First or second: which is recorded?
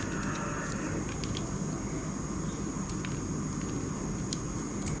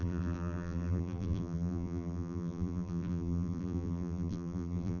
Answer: first